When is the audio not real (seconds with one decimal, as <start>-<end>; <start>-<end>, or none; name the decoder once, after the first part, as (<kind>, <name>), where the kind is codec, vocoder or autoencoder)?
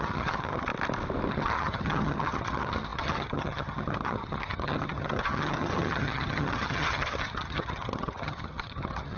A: 0.0-0.7 (vocoder, HiFi-GAN); 1.3-9.2